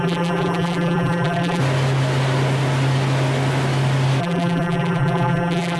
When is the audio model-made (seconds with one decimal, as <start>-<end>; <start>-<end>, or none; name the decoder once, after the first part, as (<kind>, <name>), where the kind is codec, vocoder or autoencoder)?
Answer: 0.0-1.6 (vocoder, BigVGAN v2); 4.2-5.8